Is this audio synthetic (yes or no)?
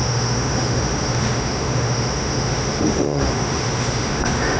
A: yes